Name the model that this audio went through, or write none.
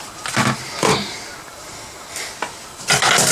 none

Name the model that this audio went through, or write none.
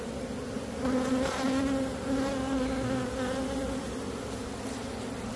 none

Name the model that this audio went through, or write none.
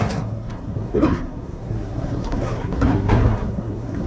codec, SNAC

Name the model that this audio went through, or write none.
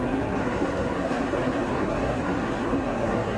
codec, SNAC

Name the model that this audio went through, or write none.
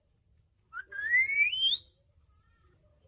none